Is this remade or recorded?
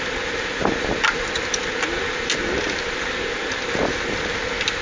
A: recorded